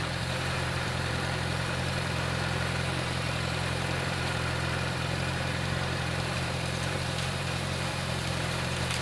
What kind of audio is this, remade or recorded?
remade